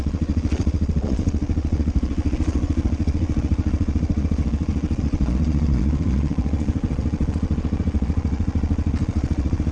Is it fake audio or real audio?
fake